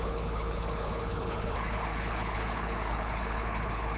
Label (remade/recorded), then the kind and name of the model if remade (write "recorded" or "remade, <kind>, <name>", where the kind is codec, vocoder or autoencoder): remade, codec, HILCodec